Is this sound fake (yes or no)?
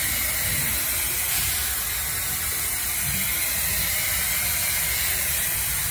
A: no